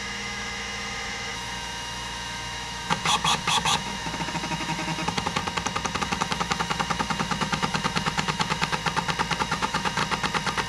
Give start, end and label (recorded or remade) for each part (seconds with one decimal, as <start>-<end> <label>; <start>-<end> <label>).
0.0-5.4 remade; 5.4-6.0 recorded; 6.0-8.8 remade; 8.8-9.4 recorded; 9.4-10.0 remade; 10.0-10.7 recorded